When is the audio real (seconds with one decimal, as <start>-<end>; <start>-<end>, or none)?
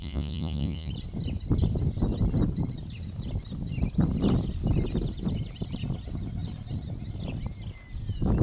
0.9-8.4